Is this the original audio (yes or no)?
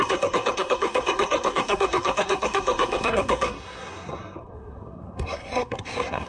no